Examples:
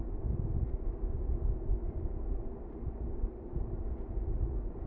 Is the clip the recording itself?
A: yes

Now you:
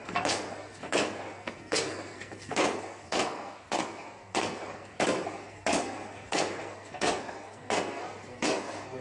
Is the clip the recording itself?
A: no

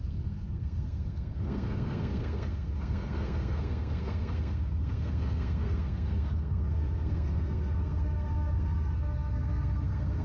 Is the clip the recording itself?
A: no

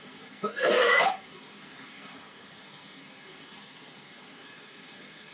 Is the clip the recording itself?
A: no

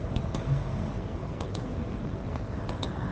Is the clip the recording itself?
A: no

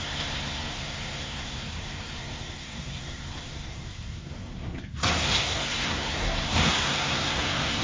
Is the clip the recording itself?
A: no